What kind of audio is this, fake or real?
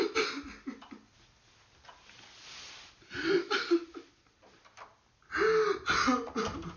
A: real